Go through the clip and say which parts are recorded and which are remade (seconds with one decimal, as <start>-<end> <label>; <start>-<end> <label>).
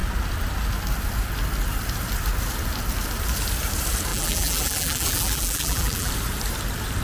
0.0-4.1 recorded; 4.1-6.1 remade; 6.1-7.0 recorded